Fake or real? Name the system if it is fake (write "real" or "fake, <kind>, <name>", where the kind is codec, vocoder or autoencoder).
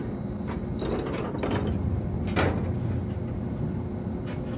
real